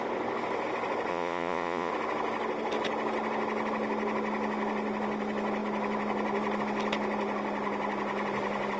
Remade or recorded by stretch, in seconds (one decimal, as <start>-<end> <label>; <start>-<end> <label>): 0.0-1.1 recorded; 1.1-1.9 remade; 1.9-8.8 recorded